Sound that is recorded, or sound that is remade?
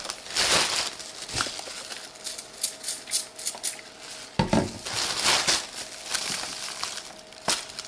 recorded